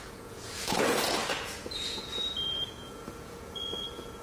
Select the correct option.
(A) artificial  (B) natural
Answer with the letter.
A